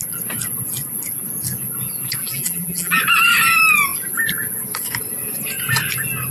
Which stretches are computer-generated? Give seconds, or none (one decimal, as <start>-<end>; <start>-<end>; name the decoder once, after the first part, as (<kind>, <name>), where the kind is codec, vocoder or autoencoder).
2.2-3.0 (vocoder, BigVGAN v2)